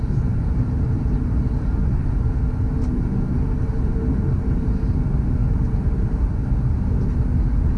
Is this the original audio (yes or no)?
yes